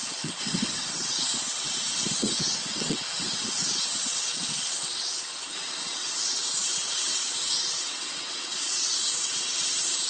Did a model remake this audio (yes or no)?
yes